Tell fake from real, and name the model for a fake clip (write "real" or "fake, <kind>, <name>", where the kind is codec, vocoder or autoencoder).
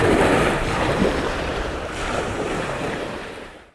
fake, vocoder, BigVGAN v2